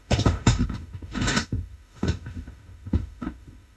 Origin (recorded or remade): remade